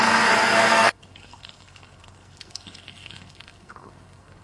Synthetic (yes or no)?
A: yes